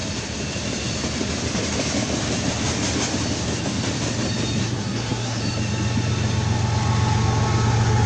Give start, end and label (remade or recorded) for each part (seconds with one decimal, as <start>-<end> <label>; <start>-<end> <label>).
0.0-4.6 recorded; 4.6-5.4 remade; 5.4-8.1 recorded